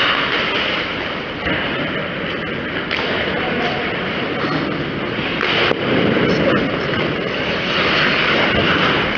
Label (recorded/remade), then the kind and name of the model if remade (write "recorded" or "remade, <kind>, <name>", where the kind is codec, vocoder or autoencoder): recorded